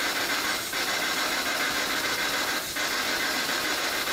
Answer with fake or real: real